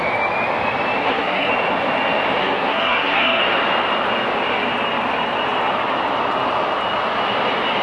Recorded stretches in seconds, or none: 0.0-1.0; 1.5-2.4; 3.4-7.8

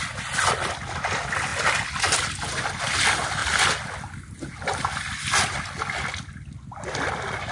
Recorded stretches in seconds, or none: 0.0-7.5

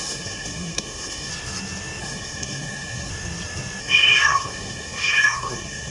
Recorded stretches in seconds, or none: 1.3-2.0; 3.1-3.8